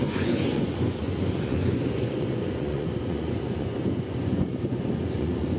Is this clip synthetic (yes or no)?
yes